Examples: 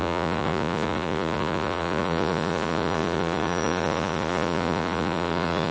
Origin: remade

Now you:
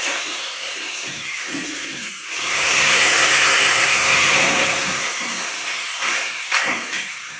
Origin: remade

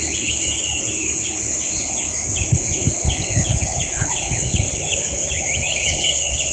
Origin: remade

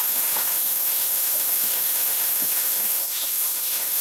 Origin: remade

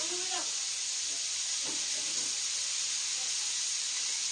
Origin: recorded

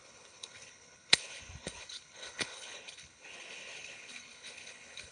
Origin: remade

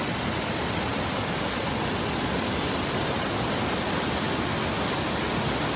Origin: recorded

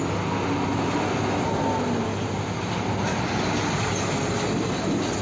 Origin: recorded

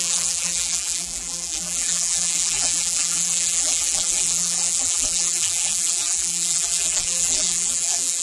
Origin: remade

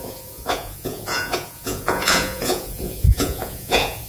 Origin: remade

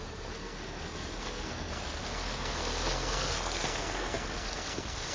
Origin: remade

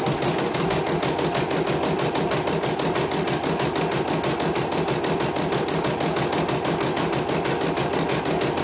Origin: recorded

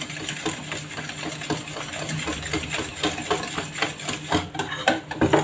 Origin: recorded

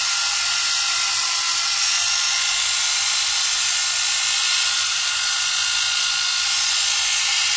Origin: recorded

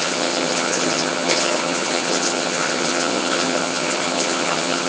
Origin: remade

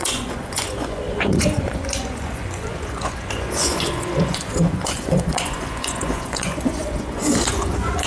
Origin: remade